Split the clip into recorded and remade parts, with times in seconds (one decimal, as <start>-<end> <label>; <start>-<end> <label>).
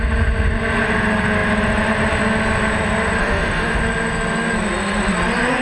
0.0-3.2 recorded; 3.2-3.8 remade; 3.8-5.6 recorded